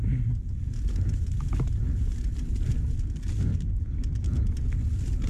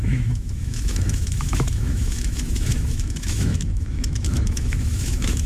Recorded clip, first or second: first